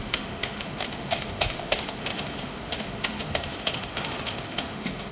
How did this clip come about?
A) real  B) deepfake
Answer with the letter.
B